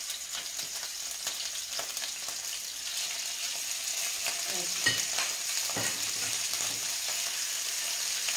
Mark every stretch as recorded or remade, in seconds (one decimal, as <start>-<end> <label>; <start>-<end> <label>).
0.0-8.4 recorded